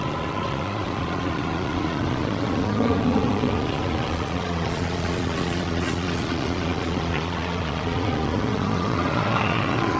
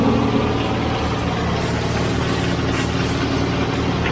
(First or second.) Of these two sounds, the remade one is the first